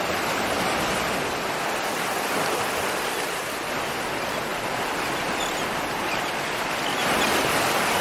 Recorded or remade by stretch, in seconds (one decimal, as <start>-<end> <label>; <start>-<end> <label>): 0.0-8.0 recorded